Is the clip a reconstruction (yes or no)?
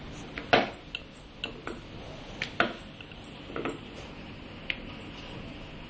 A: no